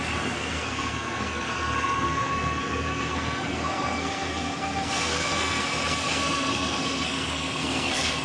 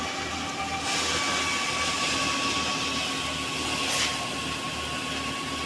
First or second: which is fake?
first